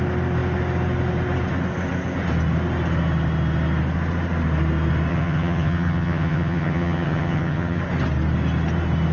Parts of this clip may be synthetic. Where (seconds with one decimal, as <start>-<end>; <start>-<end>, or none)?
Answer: 5.1-7.8